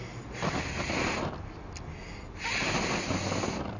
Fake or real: real